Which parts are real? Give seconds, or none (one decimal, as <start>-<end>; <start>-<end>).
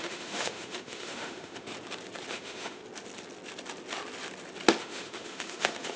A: 1.7-2.3; 2.8-4.8